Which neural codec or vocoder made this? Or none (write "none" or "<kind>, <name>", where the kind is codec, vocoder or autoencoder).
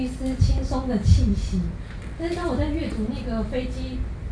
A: none